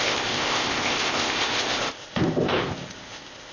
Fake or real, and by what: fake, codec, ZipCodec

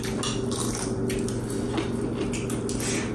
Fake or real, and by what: real